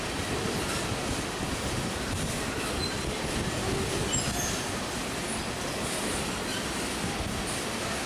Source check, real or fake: real